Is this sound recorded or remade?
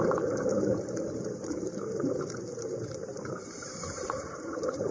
remade